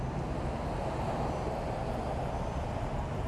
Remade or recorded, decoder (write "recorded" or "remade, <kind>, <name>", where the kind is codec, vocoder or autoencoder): recorded